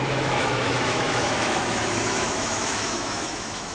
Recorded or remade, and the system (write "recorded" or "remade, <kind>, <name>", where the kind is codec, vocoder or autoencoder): remade, autoencoder, DAC-VAE